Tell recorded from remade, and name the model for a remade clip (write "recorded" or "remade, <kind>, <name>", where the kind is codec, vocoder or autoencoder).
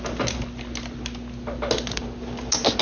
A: recorded